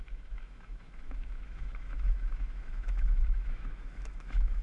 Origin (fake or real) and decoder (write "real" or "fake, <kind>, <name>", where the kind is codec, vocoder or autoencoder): fake, autoencoder, DAC-VAE